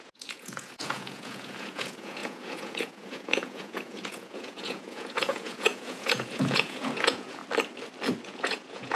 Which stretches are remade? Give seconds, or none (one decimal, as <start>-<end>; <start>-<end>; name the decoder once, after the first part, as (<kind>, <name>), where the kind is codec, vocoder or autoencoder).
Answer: 0.0-7.4 (vocoder, Vocos); 8.2-9.0